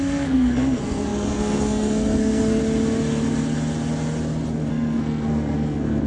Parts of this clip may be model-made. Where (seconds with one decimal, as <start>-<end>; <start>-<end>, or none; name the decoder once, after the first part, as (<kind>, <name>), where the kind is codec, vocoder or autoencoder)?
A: 0.0-2.6 (codec, SNAC); 4.7-6.1